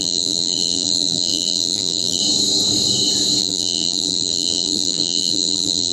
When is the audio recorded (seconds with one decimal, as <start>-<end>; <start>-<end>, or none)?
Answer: 2.2-3.4

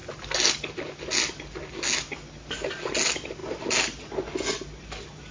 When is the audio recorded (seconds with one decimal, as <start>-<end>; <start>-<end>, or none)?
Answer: 0.0-5.3

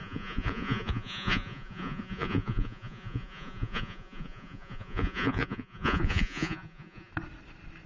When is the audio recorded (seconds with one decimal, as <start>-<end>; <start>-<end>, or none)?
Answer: 7.1-7.9

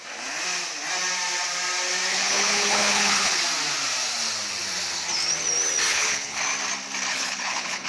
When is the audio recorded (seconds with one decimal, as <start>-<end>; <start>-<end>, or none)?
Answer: 0.0-2.1; 3.4-5.9; 6.4-7.1

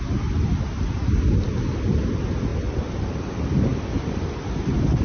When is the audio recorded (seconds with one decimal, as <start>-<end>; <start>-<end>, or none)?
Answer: 0.0-2.5; 3.3-5.0

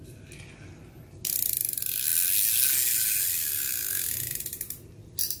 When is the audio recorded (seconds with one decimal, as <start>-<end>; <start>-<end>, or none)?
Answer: 0.0-5.4

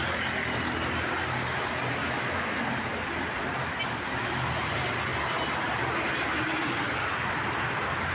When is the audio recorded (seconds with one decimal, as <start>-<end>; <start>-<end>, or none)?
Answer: 0.0-2.0; 2.6-8.1